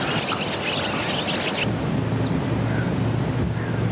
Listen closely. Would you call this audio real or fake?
real